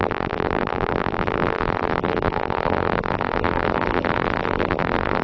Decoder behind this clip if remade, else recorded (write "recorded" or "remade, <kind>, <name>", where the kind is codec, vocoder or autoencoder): remade, vocoder, BigVGAN v2